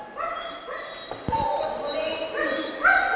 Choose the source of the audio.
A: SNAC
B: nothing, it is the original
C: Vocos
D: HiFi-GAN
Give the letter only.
B